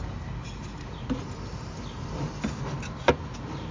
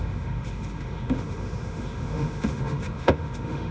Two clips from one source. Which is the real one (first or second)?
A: first